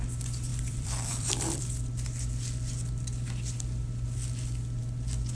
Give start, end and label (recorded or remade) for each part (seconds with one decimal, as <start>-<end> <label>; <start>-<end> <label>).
0.0-0.5 recorded; 0.5-1.6 remade; 1.6-5.3 recorded